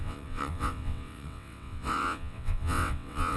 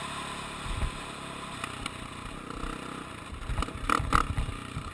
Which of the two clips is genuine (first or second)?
second